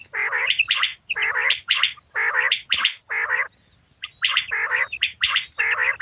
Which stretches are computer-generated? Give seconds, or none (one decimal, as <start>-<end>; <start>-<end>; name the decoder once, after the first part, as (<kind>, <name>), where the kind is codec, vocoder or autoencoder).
none